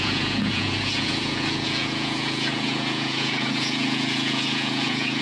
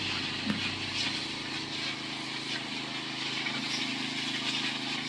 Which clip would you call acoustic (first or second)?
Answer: second